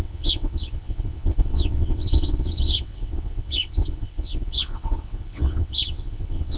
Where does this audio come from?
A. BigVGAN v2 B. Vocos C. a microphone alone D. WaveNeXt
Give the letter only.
D